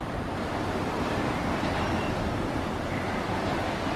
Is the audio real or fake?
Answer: fake